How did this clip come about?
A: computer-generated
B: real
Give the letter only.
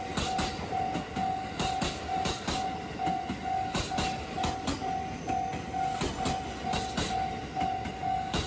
B